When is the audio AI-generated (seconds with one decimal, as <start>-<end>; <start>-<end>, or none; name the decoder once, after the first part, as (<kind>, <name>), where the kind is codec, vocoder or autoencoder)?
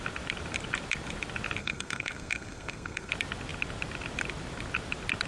1.6-3.1 (codec, SNAC)